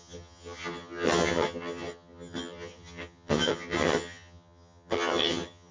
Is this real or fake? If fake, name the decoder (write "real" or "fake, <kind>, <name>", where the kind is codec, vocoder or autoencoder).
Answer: fake, vocoder, HiFi-GAN